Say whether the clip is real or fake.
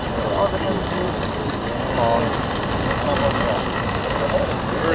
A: real